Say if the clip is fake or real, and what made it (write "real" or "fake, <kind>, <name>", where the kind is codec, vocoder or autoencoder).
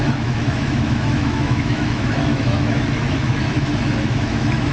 fake, autoencoder, DAC-VAE